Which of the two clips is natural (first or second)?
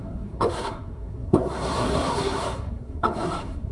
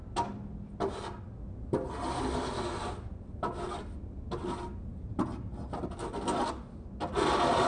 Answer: second